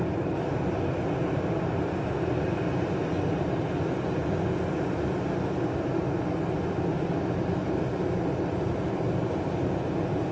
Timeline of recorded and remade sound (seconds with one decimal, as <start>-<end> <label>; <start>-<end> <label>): 0.0-10.3 recorded